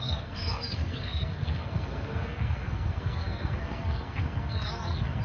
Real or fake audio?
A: fake